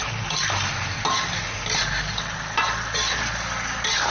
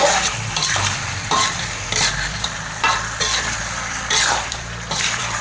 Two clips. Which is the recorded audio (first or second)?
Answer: first